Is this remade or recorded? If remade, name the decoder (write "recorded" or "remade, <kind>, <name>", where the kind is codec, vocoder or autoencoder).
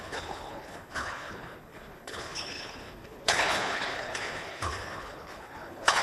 remade, codec, HILCodec